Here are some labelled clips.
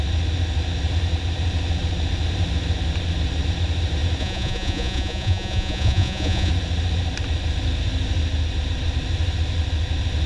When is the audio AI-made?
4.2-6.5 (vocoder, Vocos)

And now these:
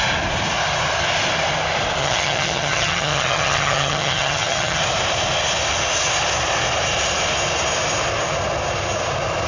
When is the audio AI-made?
2.0-4.8 (vocoder, HiFi-GAN)

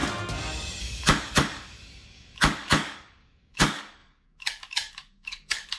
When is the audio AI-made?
0.8-5.8 (codec, DAC)

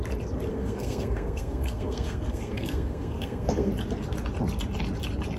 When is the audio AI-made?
0.5-3.7 (codec, SNAC)

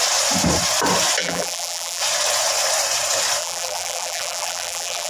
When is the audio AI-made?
1.2-2.0 (vocoder, BigVGAN v2); 3.4-5.1

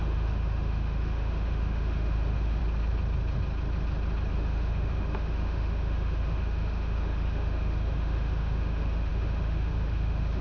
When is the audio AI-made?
0.0-2.6 (autoencoder, DAC-VAE); 4.3-10.4

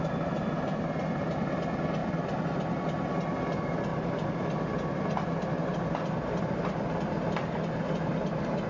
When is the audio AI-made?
3.9-4.7 (vocoder, BigVGAN v2)